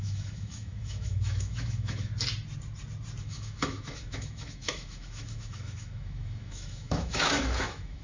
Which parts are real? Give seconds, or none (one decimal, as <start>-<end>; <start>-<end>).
2.1-3.2